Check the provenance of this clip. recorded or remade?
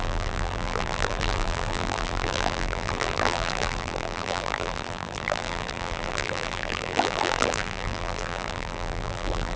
remade